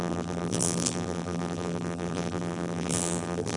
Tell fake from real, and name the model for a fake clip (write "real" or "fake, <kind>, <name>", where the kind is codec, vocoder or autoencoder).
fake, vocoder, BigVGAN v2